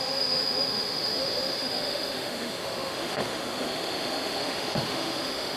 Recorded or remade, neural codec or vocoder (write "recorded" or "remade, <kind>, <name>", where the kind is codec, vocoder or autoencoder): remade, autoencoder, DAC-VAE